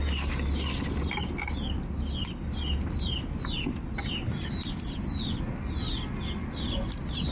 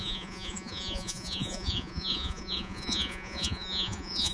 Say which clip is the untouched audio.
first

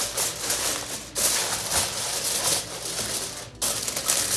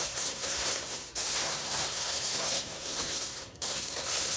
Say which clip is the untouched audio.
first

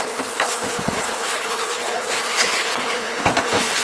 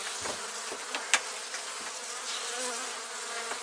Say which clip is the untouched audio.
second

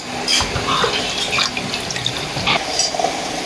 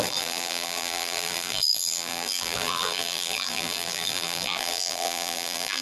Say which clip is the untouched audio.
first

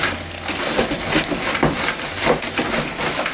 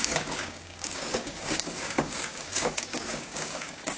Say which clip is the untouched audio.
first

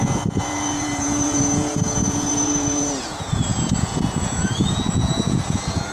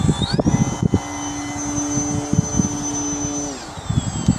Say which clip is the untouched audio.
second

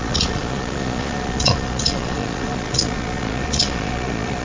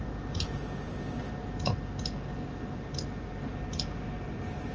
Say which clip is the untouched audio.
second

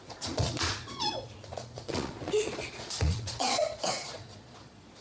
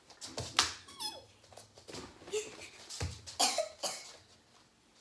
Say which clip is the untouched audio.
second